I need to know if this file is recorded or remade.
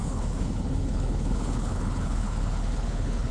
remade